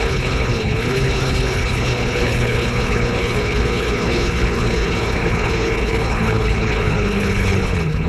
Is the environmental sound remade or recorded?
remade